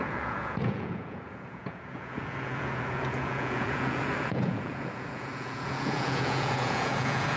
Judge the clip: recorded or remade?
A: remade